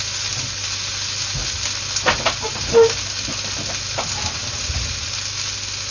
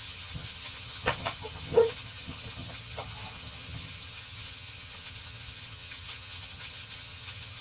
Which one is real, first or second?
first